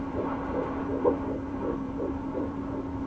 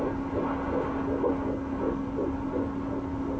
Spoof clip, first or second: first